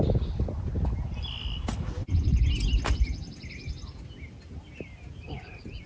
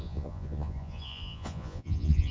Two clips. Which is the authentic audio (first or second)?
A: first